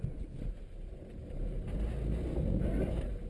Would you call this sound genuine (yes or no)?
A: yes